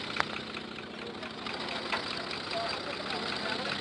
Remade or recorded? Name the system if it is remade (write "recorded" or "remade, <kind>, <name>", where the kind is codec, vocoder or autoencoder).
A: recorded